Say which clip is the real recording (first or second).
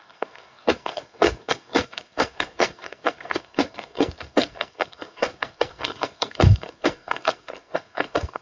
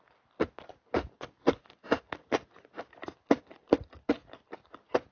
second